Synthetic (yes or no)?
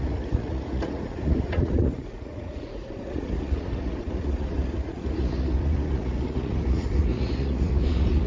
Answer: yes